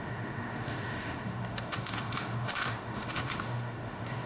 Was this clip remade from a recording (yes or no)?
yes